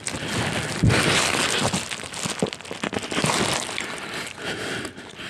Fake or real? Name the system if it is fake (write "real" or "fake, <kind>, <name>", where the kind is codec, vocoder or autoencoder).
real